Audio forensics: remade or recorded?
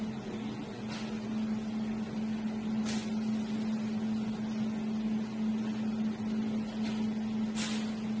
recorded